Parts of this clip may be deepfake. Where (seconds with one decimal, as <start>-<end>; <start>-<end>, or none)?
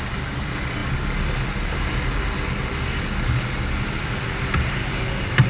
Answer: none